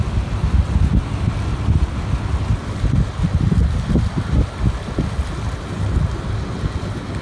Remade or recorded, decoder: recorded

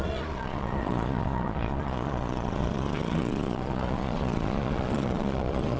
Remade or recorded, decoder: remade, vocoder, Vocos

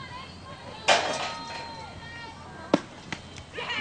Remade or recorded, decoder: recorded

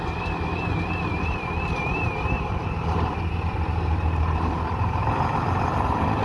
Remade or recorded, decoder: remade, vocoder, BigVGAN v2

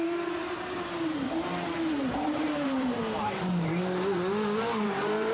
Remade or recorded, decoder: remade, vocoder, BigVGAN v2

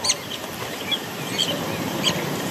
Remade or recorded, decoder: recorded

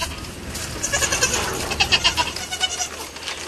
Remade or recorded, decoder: recorded